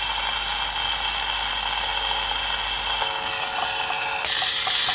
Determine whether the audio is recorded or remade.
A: recorded